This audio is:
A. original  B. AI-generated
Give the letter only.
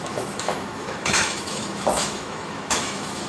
B